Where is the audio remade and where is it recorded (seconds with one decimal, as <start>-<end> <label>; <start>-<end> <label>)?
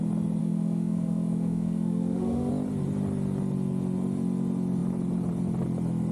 0.0-0.4 recorded; 0.4-2.5 remade; 2.5-6.1 recorded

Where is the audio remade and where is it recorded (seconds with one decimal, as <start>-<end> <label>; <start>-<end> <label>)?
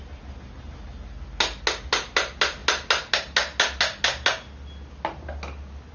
0.0-5.9 recorded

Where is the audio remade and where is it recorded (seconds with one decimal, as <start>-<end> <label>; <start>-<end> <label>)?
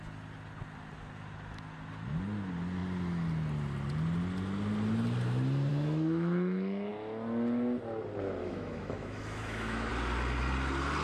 0.0-5.7 recorded; 5.7-6.9 remade; 6.9-8.4 recorded; 8.4-9.9 remade; 9.9-11.0 recorded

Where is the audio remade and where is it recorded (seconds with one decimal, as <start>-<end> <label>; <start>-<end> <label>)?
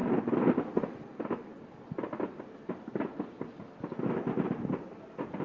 0.0-5.4 recorded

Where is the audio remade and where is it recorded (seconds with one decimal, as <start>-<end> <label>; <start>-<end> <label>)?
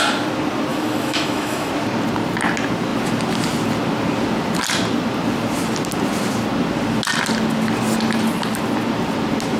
0.0-0.7 recorded; 0.7-1.7 remade; 1.7-9.6 recorded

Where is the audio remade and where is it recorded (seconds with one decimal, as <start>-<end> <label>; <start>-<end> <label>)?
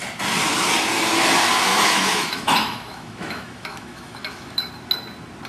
0.0-1.7 recorded; 1.7-4.7 remade; 4.7-5.5 recorded